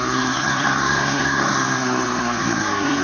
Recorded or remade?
remade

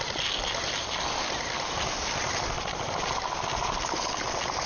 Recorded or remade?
recorded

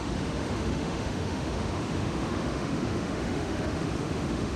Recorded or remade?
remade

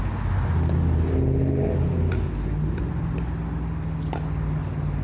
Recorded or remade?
recorded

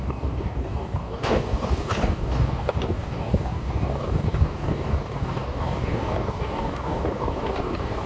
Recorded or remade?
remade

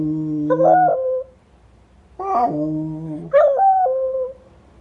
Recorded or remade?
recorded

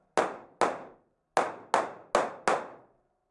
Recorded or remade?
recorded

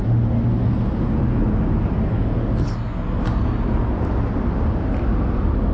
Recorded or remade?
recorded